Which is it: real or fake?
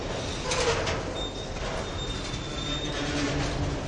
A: real